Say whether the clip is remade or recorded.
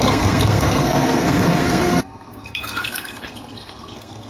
remade